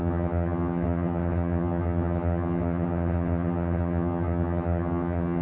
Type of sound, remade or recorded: remade